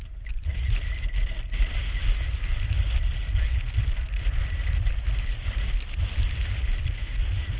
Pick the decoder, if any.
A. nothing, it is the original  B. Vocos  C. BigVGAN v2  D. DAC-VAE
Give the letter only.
A